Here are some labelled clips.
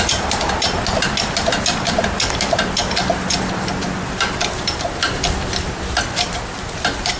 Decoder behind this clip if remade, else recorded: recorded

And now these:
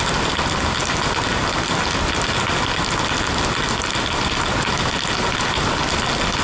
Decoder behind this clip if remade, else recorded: recorded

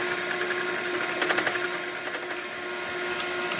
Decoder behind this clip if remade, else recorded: recorded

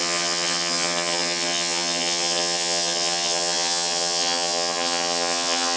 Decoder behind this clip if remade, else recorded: remade, vocoder, HiFi-GAN